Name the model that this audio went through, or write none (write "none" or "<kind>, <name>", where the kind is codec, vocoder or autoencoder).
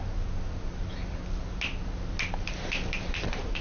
none